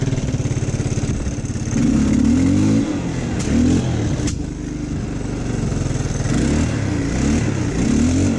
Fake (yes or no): no